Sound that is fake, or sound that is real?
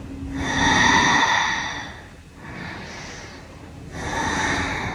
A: real